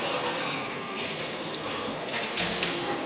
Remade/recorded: remade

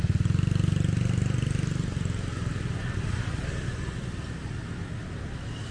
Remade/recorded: recorded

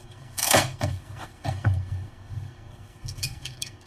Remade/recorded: remade